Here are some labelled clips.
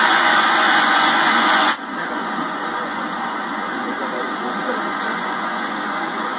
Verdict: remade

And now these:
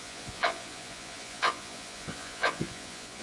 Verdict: remade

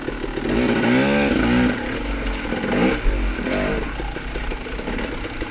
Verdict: recorded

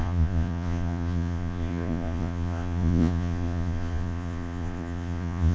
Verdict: remade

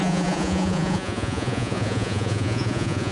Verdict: remade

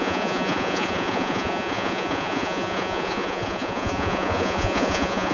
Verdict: remade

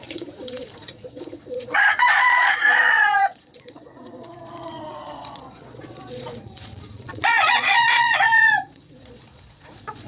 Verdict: remade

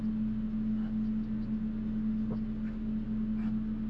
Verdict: recorded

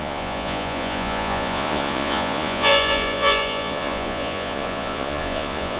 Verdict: remade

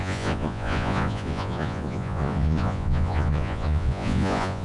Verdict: remade